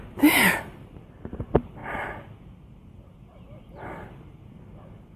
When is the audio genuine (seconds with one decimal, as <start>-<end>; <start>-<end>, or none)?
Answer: 0.0-5.2